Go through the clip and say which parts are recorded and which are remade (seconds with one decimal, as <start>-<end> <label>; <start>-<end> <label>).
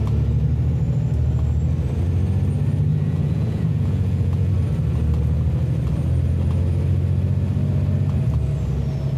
0.0-2.9 recorded; 2.9-4.5 remade; 4.5-9.2 recorded